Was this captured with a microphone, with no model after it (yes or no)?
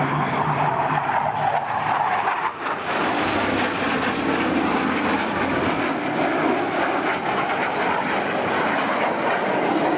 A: yes